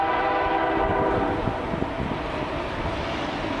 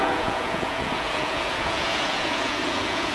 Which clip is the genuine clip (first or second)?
first